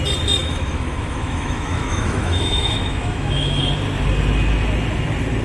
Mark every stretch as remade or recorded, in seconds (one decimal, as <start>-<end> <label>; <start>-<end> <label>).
0.0-0.4 recorded; 0.4-3.6 remade; 3.6-5.4 recorded